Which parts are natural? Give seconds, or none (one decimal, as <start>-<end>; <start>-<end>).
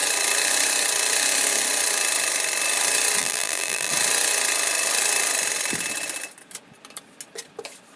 0.0-3.2; 3.9-8.0